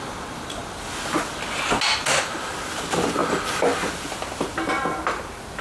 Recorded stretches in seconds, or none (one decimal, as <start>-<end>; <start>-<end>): 0.0-5.6